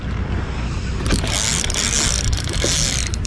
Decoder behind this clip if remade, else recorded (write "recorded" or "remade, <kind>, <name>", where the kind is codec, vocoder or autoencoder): recorded